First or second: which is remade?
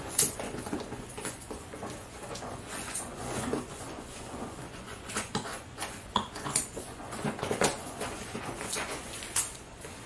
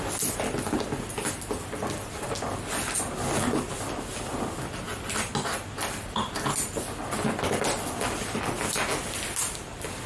first